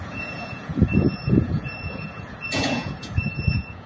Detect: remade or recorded remade